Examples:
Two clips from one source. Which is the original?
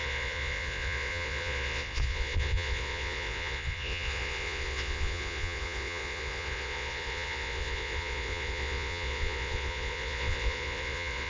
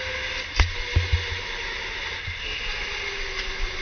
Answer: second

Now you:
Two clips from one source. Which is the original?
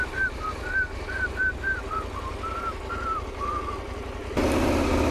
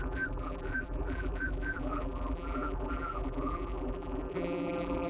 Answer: first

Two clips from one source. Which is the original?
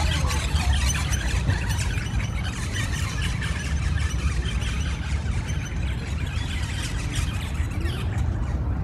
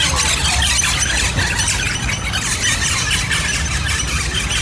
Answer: second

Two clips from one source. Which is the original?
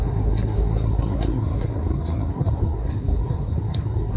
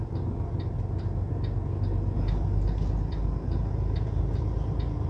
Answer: second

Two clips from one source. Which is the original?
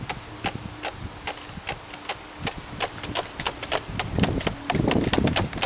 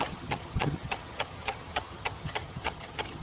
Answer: first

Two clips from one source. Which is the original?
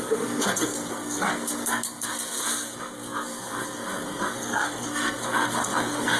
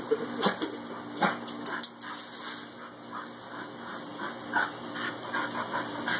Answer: second